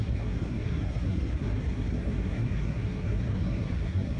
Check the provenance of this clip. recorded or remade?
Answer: remade